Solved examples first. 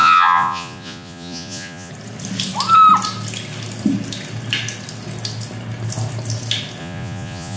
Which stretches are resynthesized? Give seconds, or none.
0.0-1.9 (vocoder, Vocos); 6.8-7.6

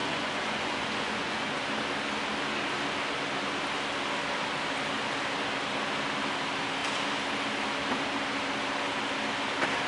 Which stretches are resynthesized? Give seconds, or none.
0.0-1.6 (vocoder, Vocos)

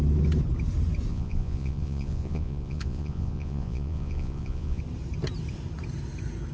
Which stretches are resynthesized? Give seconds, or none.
1.1-4.8 (vocoder, Vocos)